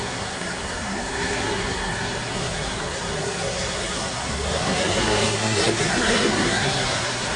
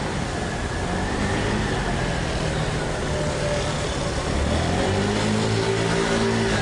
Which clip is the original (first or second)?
second